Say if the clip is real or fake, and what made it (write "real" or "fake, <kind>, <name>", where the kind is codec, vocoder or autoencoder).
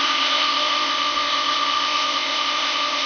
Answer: fake, codec, ZipCodec